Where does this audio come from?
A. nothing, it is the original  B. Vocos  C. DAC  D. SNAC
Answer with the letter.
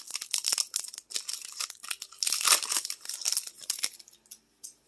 A